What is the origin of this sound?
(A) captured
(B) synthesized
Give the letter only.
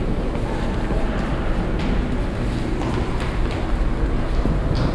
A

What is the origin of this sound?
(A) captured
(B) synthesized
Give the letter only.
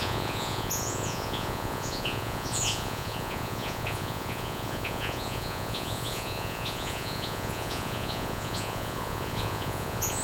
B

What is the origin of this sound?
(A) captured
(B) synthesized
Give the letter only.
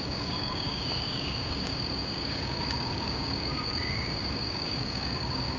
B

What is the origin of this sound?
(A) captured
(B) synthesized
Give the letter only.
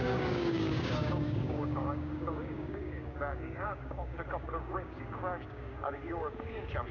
B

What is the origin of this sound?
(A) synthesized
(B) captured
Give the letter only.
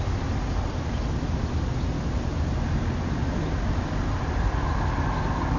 B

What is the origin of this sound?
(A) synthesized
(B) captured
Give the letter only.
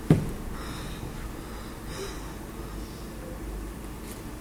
B